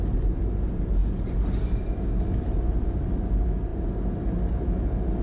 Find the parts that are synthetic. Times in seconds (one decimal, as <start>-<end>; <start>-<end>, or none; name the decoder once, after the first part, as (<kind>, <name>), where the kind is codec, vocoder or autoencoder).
none